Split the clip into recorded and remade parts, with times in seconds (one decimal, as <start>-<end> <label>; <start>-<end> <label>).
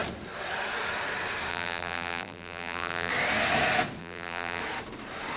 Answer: 0.0-1.5 recorded; 1.5-3.1 remade; 3.1-4.0 recorded; 4.0-4.6 remade; 4.6-5.4 recorded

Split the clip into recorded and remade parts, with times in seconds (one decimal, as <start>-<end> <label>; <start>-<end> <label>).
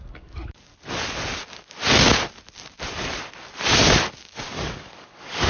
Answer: 0.0-0.7 remade; 0.7-4.0 recorded; 4.0-5.5 remade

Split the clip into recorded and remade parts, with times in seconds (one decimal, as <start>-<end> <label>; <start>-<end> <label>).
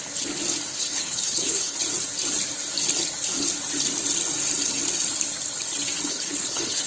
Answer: 0.0-0.7 recorded; 0.7-1.8 remade; 1.8-6.1 recorded; 6.1-6.9 remade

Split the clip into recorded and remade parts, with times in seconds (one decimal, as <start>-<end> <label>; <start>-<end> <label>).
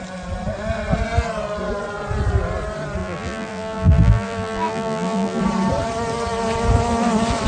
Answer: 0.0-3.0 recorded; 3.0-5.4 remade; 5.4-7.5 recorded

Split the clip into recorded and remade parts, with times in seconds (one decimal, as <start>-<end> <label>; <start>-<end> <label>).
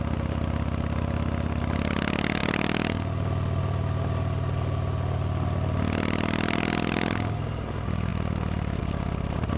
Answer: 0.0-9.6 recorded